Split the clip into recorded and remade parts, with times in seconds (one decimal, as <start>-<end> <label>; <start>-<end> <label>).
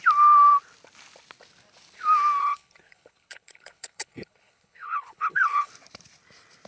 0.0-2.4 recorded; 2.4-5.7 remade; 5.7-6.7 recorded